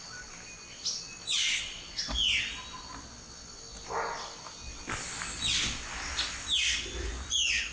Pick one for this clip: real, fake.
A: real